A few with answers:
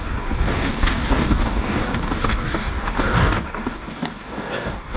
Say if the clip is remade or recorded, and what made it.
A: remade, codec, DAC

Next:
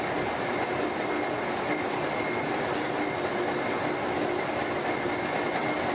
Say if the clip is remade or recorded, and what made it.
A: recorded